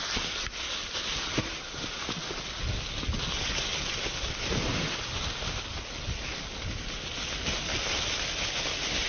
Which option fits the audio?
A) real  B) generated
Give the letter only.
A